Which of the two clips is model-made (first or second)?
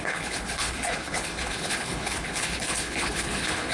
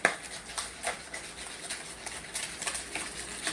first